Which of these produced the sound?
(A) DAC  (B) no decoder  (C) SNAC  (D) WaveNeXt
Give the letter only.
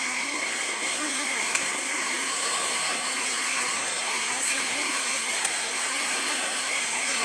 C